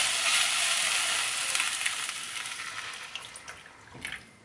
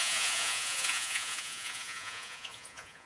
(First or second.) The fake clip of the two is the second